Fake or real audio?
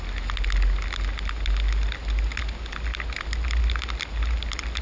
real